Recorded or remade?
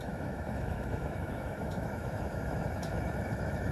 remade